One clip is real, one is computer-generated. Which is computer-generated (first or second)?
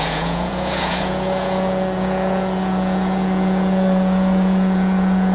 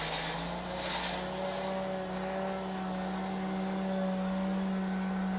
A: first